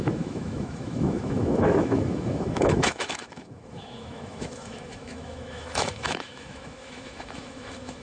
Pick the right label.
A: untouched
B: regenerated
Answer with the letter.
B